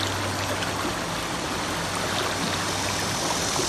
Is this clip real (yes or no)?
yes